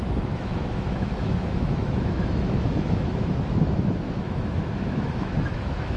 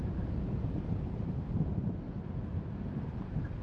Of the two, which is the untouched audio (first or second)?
second